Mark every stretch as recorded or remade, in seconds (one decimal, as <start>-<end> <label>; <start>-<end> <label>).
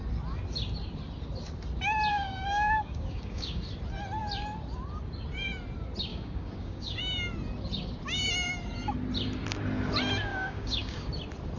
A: 0.0-2.1 recorded; 2.1-3.6 remade; 3.6-6.1 recorded; 6.1-7.0 remade; 7.0-10.3 recorded; 10.3-11.1 remade; 11.1-11.6 recorded